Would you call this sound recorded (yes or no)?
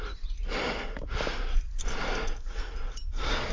yes